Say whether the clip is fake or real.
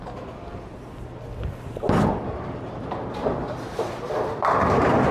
real